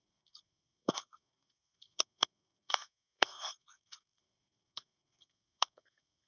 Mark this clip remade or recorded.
remade